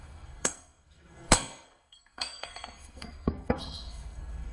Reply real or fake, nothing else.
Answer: fake